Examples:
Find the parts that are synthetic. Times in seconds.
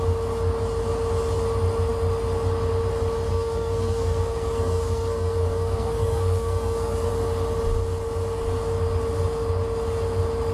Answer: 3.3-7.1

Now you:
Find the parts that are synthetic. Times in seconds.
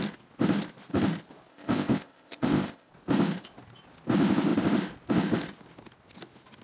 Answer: 1.5-2.9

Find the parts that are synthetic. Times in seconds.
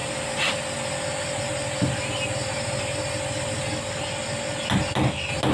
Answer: none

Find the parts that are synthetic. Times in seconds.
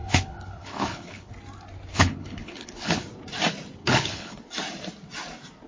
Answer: 0.0-1.3; 1.9-3.0; 3.8-4.4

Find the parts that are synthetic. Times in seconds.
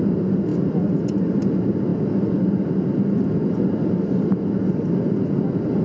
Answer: none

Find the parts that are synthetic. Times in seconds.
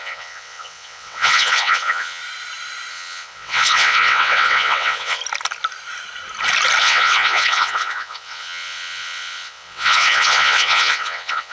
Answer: 0.0-2.2; 2.9-5.2; 6.8-11.5